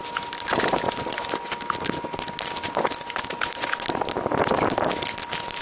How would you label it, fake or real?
real